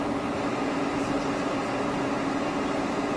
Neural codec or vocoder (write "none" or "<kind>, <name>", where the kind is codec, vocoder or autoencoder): none